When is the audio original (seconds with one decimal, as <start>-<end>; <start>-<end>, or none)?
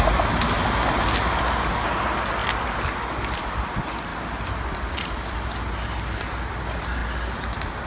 0.0-7.9